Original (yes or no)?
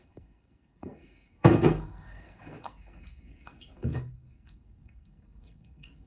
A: no